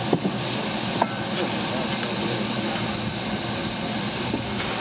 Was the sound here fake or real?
real